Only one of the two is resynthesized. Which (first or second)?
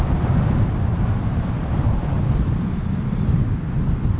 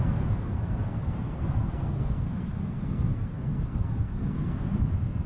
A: second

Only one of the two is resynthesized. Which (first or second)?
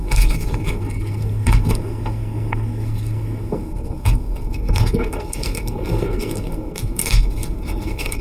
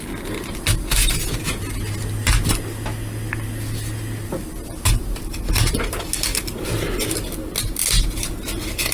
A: first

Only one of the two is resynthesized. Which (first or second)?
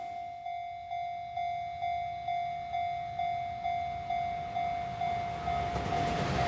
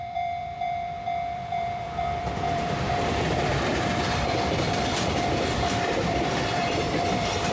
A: second